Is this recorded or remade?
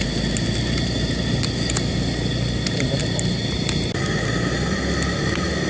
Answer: recorded